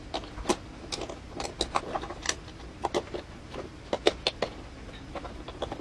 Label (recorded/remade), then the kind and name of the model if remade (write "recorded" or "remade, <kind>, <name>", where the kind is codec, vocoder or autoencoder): recorded